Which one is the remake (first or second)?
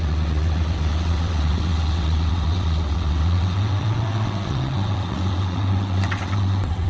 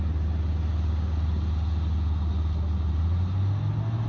first